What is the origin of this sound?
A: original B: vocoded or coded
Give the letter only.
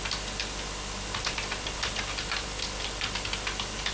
A